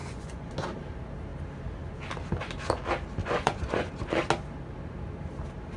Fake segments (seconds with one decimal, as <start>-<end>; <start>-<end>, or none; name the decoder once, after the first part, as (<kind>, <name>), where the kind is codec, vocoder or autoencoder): 0.0-0.5 (vocoder, Vocos); 3.2-3.9

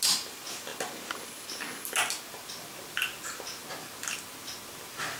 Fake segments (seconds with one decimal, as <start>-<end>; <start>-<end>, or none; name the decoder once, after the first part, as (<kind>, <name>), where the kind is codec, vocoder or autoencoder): none

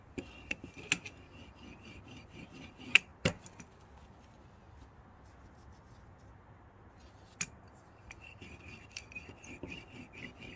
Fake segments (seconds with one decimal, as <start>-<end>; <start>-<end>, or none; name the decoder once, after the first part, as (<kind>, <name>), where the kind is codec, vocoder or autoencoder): none

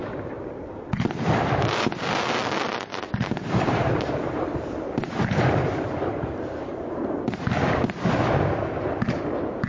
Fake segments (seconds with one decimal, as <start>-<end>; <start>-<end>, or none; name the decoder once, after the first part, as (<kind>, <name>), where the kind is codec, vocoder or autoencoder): 0.0-0.7 (vocoder, BigVGAN v2); 2.9-7.5

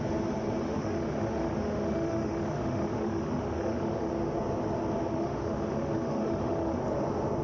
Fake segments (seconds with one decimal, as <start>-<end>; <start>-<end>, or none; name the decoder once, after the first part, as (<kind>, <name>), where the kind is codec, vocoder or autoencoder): 0.6-4.1 (autoencoder, DAC-VAE); 5.1-6.8

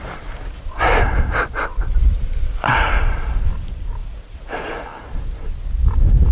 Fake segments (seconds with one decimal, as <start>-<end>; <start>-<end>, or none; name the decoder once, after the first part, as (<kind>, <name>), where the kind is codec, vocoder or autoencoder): 0.0-4.0 (vocoder, BigVGAN v2); 5.7-6.3

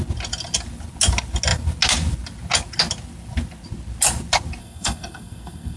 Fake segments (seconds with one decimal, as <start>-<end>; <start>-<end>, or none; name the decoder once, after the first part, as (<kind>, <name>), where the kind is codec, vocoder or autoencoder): 4.6-5.8 (codec, SNAC)

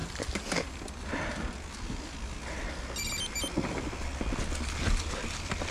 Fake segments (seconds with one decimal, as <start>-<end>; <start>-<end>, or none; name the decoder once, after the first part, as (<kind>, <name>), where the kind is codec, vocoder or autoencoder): none